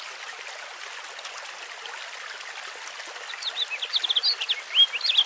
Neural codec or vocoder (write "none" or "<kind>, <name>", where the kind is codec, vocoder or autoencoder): none